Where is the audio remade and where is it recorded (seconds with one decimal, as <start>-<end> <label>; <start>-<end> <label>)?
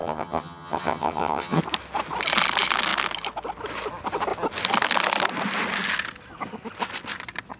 0.0-1.6 remade; 1.6-7.6 recorded